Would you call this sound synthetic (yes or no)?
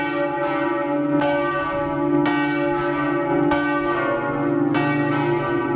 no